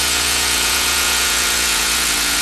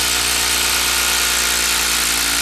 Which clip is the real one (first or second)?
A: second